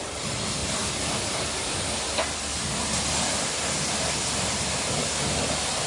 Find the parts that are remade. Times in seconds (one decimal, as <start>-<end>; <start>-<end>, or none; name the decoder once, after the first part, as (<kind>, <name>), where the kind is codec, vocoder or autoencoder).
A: none